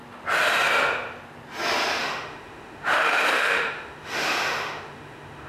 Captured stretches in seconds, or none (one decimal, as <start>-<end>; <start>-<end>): 0.0-2.0